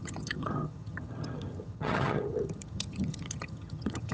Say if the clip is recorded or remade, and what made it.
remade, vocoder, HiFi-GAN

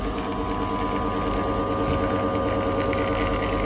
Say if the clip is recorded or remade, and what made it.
recorded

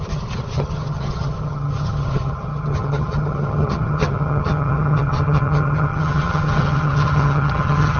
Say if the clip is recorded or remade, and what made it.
remade, vocoder, HiFi-GAN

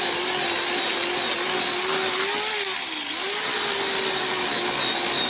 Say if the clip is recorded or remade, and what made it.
recorded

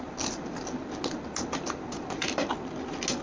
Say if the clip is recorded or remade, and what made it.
recorded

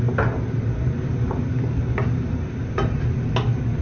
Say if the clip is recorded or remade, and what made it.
recorded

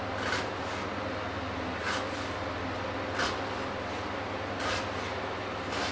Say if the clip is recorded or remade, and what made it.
recorded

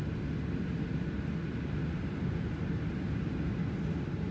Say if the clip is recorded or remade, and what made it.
recorded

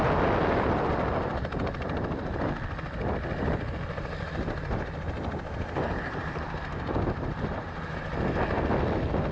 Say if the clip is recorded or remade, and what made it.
recorded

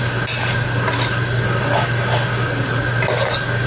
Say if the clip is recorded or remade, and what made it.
recorded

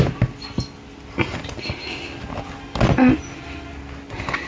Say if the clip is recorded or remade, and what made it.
recorded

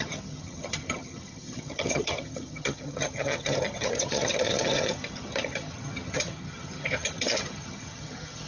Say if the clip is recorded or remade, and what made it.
remade, vocoder, HiFi-GAN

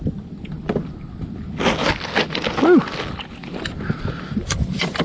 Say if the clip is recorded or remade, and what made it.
recorded